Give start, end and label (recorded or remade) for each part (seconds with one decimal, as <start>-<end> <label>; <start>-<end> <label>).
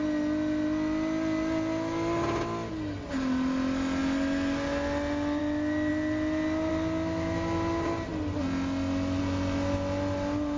0.0-10.6 recorded